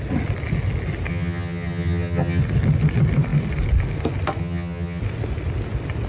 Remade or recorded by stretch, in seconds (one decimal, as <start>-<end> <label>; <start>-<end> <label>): 0.0-1.1 recorded; 1.1-2.4 remade; 2.4-4.4 recorded; 4.4-5.0 remade; 5.0-6.1 recorded